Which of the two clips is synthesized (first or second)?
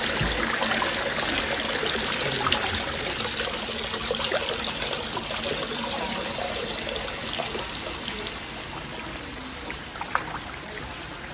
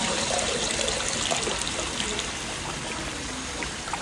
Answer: second